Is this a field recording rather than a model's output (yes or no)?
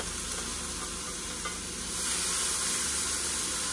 yes